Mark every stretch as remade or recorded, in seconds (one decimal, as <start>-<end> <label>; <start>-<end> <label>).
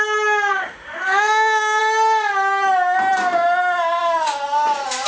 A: 0.0-0.5 recorded; 0.5-1.8 remade; 1.8-5.1 recorded